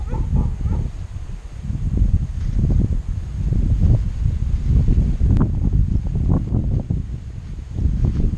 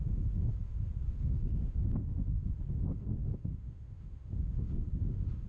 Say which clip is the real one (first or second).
first